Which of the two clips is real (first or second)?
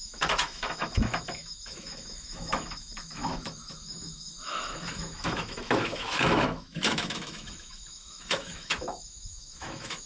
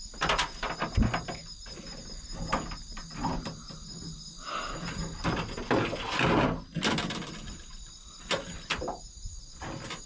second